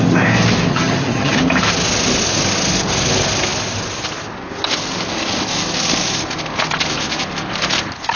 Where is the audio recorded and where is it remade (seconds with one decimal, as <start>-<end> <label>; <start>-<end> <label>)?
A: 0.0-0.7 recorded; 0.7-1.4 remade; 1.4-8.2 recorded